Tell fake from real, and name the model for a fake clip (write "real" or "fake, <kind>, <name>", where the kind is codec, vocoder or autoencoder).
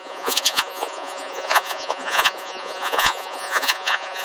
fake, vocoder, Vocos